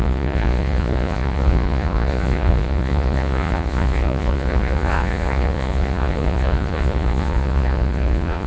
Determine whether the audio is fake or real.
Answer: fake